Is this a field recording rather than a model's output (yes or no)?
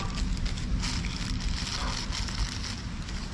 yes